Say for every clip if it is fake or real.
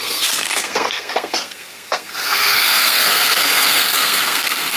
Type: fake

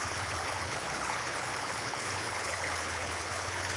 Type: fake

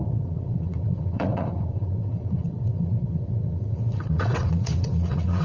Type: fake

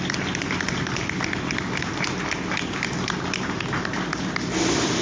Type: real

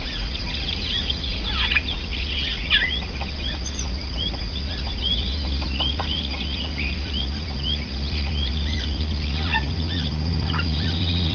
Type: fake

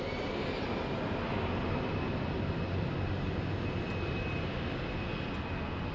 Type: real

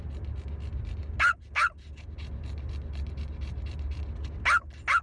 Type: real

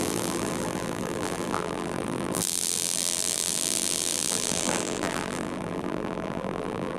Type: fake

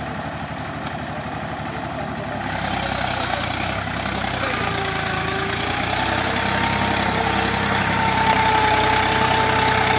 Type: real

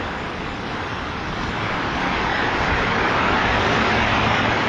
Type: fake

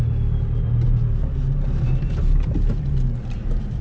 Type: real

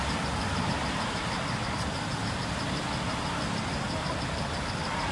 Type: real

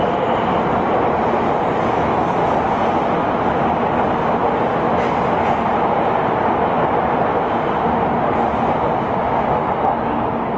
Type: real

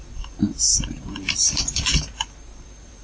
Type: fake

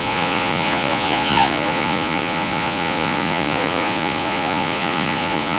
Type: fake